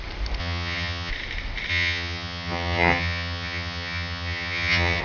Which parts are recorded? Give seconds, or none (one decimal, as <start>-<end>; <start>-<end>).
0.0-0.4; 1.1-1.7